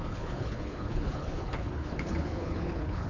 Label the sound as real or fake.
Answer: fake